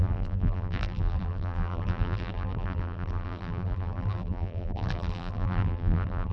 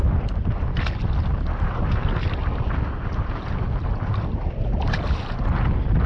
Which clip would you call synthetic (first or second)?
first